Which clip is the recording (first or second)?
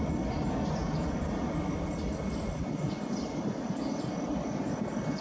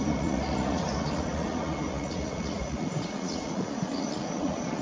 first